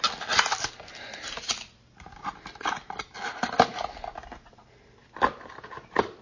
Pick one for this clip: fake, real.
real